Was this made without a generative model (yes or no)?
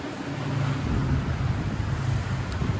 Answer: yes